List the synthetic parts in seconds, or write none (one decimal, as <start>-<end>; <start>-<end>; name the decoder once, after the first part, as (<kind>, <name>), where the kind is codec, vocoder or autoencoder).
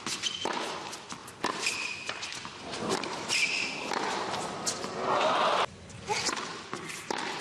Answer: 1.2-3.7 (vocoder, BigVGAN v2)